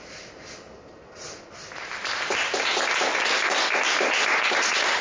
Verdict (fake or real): real